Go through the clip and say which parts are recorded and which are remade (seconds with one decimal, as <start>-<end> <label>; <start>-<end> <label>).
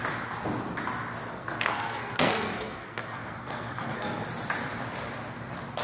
0.0-1.3 recorded; 1.3-4.2 remade; 4.2-5.8 recorded